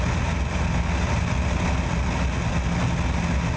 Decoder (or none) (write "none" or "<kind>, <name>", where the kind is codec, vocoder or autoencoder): none